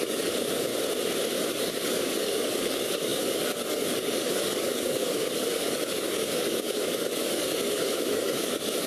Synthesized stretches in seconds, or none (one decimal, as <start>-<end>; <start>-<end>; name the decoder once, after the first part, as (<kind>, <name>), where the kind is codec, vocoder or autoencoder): 0.0-0.7 (codec, DAC); 1.5-8.9